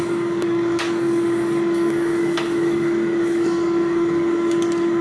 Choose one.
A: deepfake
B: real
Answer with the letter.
A